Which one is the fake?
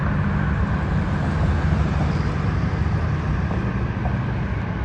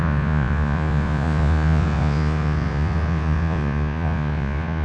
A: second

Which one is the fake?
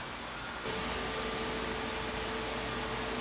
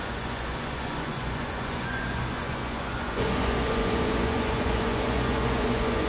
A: second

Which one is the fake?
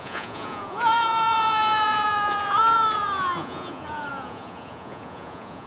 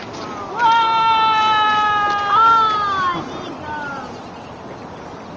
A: first